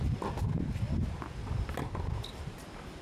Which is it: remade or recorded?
recorded